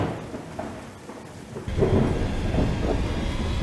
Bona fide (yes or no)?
yes